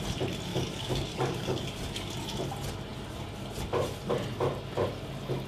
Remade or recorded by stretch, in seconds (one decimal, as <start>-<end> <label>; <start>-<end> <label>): 0.0-0.5 recorded; 0.5-2.1 remade; 2.1-5.5 recorded